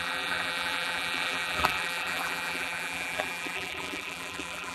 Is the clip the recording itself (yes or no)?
no